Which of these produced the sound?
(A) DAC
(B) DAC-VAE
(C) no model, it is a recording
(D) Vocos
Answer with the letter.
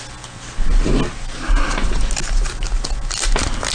C